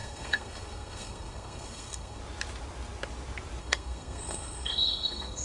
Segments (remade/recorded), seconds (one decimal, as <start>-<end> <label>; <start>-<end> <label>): 0.0-2.2 remade; 2.2-3.6 recorded; 3.6-5.4 remade